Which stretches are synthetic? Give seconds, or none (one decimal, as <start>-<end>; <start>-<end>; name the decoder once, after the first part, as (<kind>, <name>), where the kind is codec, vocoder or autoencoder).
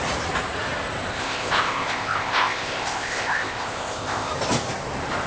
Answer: 1.1-4.3 (codec, ZipCodec)